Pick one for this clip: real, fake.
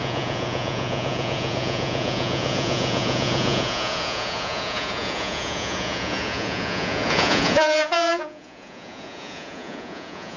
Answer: fake